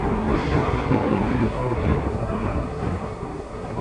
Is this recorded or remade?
remade